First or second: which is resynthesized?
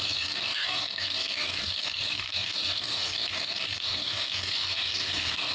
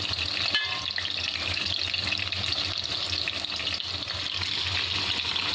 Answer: first